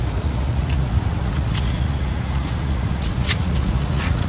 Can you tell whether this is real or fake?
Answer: fake